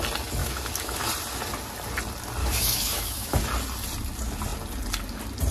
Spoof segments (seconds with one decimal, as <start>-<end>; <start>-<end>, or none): 0.4-1.1; 2.4-3.4